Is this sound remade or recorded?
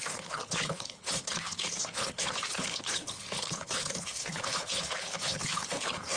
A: remade